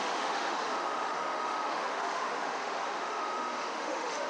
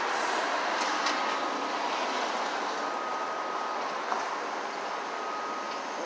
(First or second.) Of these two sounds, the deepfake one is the first